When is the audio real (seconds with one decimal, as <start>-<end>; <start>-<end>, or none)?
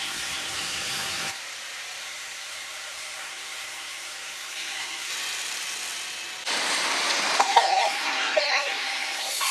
1.4-2.0; 5.1-7.4